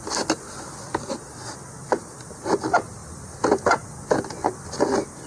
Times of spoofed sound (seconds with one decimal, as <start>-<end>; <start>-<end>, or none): none